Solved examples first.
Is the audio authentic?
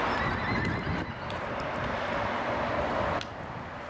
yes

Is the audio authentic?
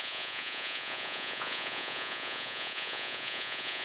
no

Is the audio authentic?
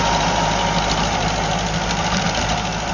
yes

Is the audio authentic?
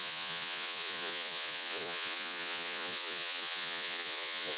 no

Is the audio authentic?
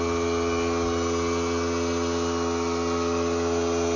yes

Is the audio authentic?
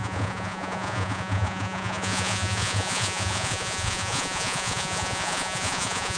no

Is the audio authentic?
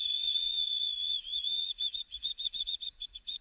no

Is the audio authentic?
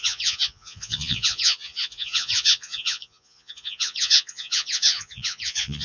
no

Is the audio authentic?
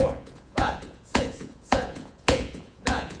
no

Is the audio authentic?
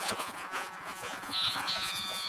no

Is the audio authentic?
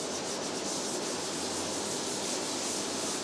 yes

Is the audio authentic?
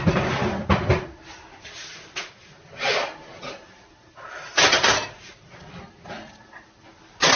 yes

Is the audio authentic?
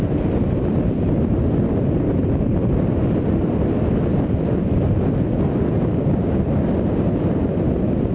yes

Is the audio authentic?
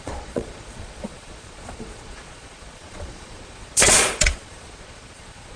no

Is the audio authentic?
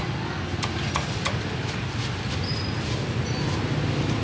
yes